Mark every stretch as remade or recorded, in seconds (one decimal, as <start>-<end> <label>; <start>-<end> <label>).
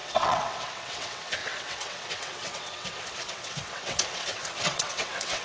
0.0-5.4 remade